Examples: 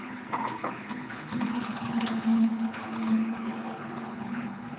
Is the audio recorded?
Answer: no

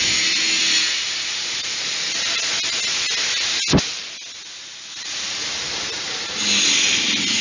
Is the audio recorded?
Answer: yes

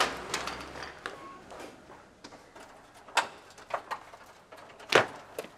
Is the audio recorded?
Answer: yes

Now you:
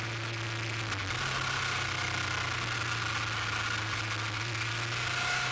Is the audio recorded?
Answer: yes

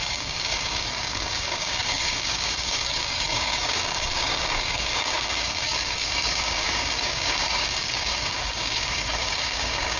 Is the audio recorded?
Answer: no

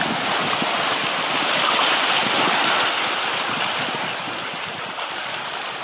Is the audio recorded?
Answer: yes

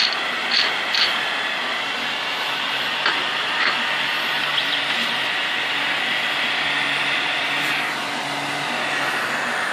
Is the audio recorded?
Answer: no